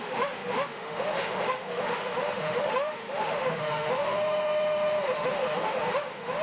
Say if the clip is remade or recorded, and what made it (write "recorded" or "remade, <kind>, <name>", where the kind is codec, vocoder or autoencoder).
remade, autoencoder, DAC-VAE